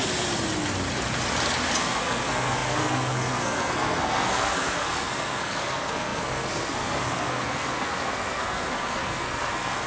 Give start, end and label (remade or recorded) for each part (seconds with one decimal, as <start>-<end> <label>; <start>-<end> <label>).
0.0-1.8 recorded; 1.8-9.9 remade